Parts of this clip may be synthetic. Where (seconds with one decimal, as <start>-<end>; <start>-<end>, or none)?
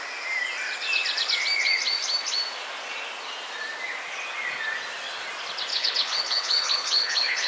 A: 5.7-7.5